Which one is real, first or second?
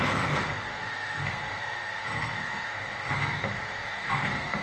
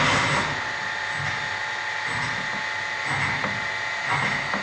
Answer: second